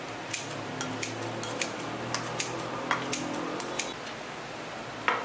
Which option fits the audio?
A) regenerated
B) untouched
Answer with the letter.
B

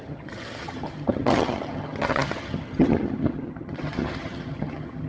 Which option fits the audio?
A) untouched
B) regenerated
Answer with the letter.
B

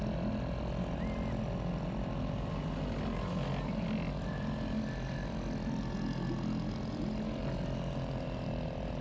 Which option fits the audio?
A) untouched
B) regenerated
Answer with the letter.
A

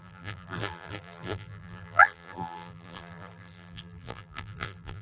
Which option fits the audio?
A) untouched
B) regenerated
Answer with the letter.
B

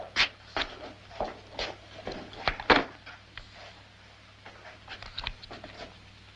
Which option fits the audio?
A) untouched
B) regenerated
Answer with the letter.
A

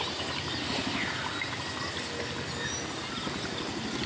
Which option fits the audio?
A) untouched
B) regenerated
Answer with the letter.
A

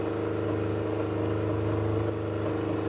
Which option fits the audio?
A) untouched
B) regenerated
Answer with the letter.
A